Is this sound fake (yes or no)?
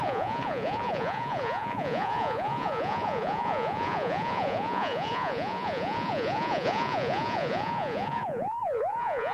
yes